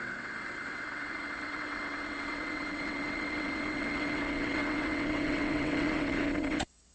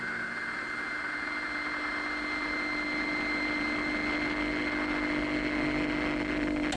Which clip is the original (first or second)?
second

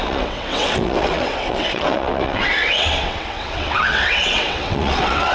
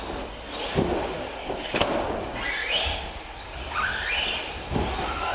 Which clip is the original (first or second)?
second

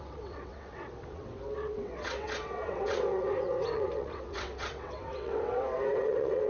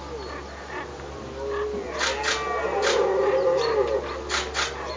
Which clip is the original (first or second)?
second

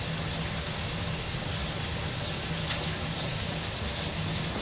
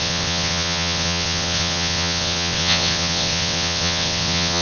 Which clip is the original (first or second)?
first